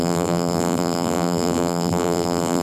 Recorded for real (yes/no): no